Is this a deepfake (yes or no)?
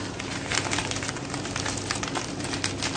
no